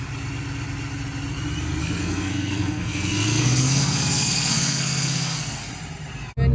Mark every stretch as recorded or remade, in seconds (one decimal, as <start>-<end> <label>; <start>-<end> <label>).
0.0-1.8 recorded; 1.8-5.7 remade; 5.7-6.5 recorded